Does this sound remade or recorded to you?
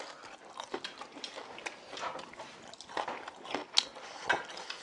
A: recorded